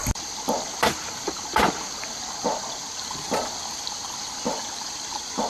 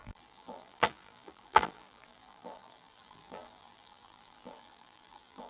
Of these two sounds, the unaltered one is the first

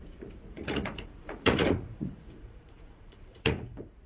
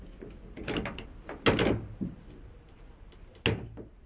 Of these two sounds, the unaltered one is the second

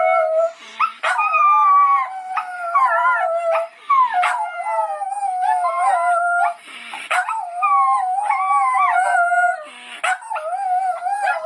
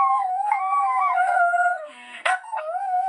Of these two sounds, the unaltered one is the first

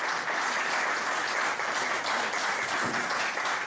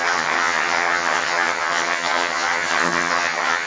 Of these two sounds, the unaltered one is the first